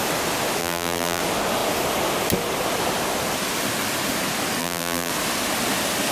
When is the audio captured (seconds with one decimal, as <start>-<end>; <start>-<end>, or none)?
0.0-0.6; 1.2-4.6; 5.1-6.1